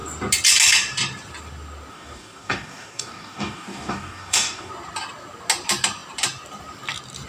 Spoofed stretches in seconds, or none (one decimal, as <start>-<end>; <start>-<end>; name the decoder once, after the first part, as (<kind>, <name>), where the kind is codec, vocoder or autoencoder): 1.9-4.7 (codec, DAC)

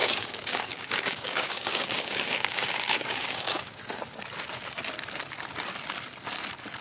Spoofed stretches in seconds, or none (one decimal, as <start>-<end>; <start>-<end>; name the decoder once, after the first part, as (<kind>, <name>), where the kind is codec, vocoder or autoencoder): 0.0-3.8 (codec, DAC)